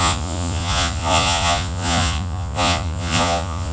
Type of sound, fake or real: fake